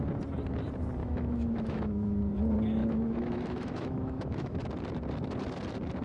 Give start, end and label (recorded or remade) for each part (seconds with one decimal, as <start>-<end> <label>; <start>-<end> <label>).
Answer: 0.0-1.0 recorded; 1.0-2.2 remade; 2.2-2.8 recorded; 2.8-4.6 remade; 4.6-6.0 recorded